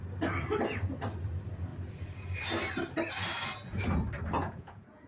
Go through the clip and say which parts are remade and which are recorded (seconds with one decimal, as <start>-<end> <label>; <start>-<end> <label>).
0.0-4.4 recorded; 4.4-5.1 remade